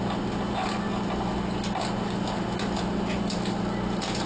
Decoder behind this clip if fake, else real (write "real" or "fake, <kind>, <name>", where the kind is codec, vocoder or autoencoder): real